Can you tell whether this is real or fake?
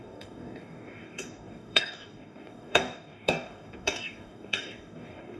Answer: fake